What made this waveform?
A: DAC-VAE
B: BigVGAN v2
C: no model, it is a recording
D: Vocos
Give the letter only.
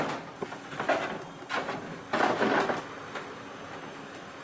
C